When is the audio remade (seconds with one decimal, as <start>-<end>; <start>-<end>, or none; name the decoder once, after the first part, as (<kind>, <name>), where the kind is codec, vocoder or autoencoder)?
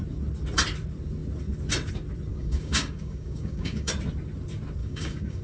2.3-3.9 (codec, DAC); 4.8-5.4